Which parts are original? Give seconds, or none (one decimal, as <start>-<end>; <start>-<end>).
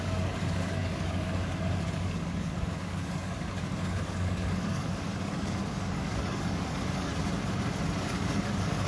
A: 7.1-8.0